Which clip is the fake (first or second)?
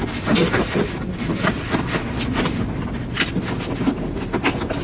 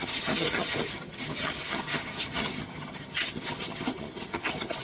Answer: second